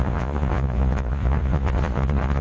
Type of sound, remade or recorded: remade